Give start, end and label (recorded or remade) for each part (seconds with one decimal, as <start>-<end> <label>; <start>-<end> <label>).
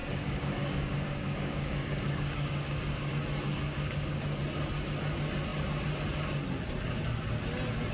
0.0-3.1 remade; 3.1-3.5 recorded; 3.5-4.4 remade; 4.4-7.9 recorded